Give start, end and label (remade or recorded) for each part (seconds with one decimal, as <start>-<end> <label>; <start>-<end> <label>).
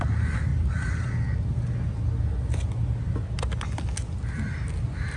0.0-0.5 recorded; 0.5-1.1 remade; 1.1-5.2 recorded